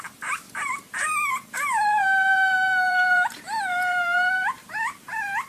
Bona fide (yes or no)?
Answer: no